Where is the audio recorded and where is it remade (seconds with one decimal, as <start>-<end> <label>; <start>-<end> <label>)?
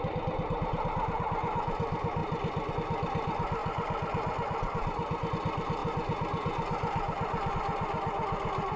0.0-8.8 recorded